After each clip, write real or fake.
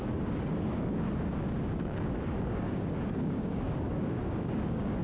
fake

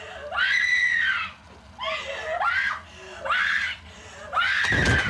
real